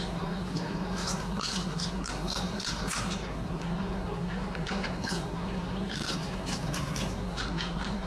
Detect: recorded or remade remade